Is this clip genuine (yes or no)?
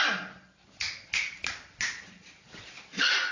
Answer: yes